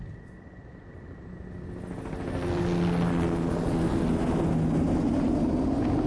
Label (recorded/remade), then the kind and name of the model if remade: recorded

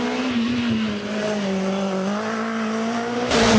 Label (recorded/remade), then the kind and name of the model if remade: recorded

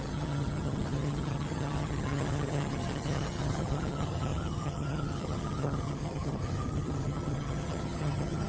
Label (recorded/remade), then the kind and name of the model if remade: remade, vocoder, HiFi-GAN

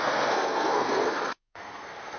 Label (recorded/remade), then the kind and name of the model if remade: remade, codec, SNAC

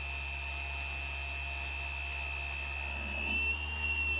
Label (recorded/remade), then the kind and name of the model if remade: recorded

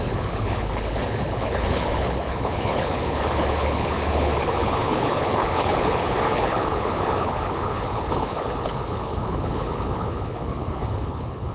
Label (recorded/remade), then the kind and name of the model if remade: remade, codec, HILCodec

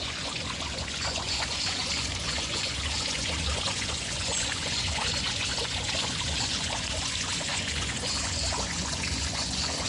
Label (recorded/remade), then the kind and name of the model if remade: remade, vocoder, Vocos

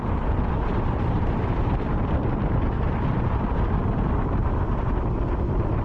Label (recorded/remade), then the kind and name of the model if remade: remade, vocoder, BigVGAN v2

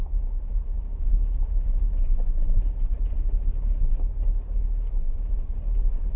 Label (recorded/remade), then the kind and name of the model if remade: recorded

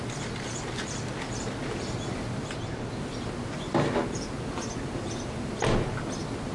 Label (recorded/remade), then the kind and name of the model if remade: recorded